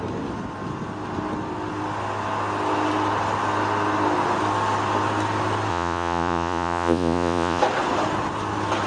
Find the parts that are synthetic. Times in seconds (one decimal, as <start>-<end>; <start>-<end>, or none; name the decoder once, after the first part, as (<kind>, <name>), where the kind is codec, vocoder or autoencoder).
5.7-7.6 (vocoder, Vocos)